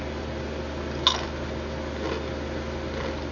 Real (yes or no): yes